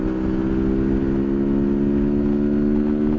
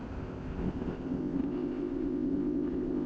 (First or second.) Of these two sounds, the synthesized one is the second